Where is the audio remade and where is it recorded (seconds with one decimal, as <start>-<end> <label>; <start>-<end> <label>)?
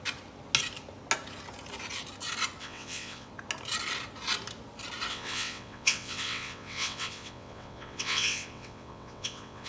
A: 0.0-2.6 recorded; 2.6-3.3 remade; 3.3-5.1 recorded; 5.1-9.7 remade